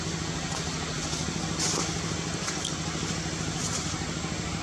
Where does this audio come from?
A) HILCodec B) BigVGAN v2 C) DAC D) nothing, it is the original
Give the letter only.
D